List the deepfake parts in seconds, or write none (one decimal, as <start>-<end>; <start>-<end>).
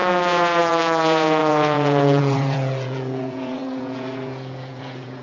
0.0-5.2